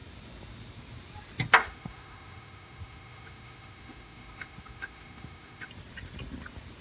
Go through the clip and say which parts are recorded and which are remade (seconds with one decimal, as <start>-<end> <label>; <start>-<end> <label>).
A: 0.0-1.6 recorded; 1.6-5.7 remade; 5.7-6.8 recorded